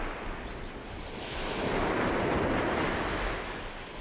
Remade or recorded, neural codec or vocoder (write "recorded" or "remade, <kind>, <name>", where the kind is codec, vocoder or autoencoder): recorded